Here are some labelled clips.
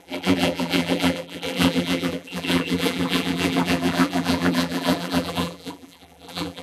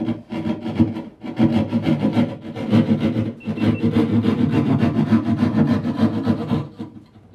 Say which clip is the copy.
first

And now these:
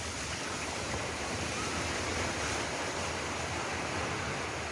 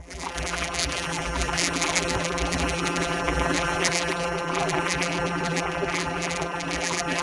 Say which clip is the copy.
second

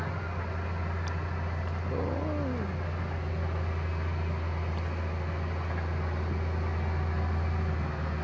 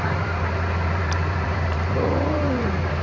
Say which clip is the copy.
second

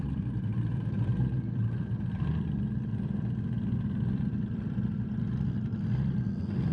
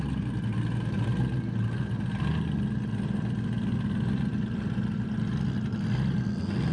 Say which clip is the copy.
first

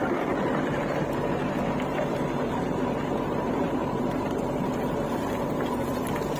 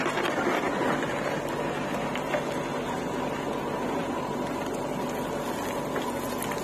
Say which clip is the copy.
first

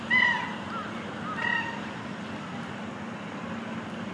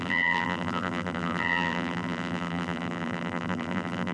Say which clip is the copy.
second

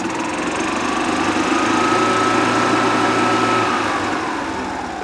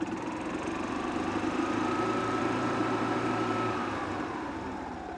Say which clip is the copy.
second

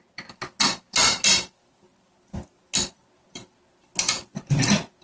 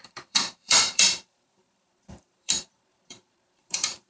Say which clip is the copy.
second